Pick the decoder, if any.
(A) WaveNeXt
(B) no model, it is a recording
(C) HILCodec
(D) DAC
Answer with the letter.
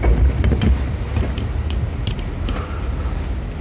B